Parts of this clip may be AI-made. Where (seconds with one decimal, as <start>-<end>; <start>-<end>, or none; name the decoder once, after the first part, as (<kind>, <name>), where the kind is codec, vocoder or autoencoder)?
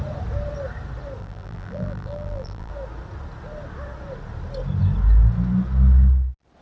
1.2-2.7 (vocoder, BigVGAN v2)